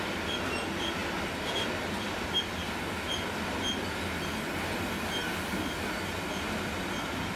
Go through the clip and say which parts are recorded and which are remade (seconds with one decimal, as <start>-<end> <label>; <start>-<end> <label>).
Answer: 0.0-7.4 recorded